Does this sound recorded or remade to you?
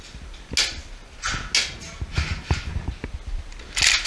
recorded